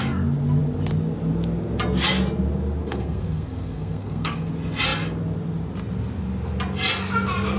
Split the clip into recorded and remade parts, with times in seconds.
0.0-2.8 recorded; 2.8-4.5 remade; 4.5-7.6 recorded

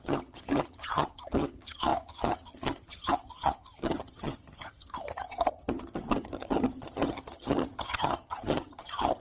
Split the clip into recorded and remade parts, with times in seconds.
0.0-9.2 remade

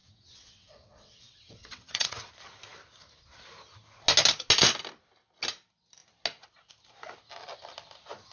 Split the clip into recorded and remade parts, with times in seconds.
0.0-2.3 remade; 2.3-8.3 recorded

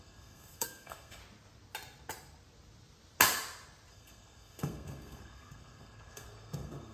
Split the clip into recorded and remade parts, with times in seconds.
0.0-1.2 remade; 1.2-3.9 recorded; 3.9-6.9 remade

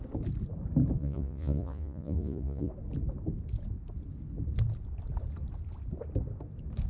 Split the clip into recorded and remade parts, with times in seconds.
0.0-1.0 recorded; 1.0-2.7 remade; 2.7-6.9 recorded

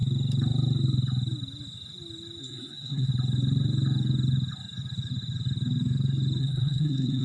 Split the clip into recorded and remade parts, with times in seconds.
0.0-2.4 recorded; 2.4-3.1 remade; 3.1-6.4 recorded; 6.4-7.2 remade

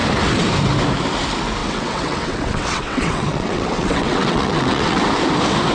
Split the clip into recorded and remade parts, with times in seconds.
0.0-1.6 recorded; 1.6-5.0 remade; 5.0-5.7 recorded